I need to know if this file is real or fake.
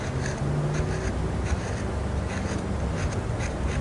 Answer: real